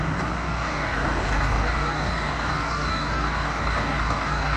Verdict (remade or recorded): remade